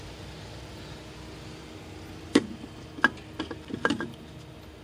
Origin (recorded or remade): recorded